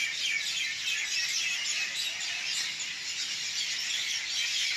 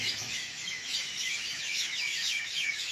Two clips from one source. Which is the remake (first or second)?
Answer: second